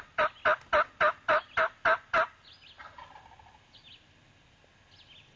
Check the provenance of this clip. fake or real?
real